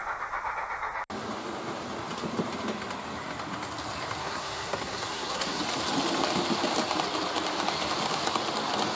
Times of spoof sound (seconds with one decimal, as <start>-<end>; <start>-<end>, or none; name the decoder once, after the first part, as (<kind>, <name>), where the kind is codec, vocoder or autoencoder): 4.2-5.6 (codec, SNAC)